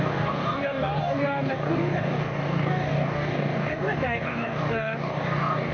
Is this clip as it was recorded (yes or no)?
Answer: no